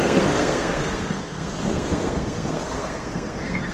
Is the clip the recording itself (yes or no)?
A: no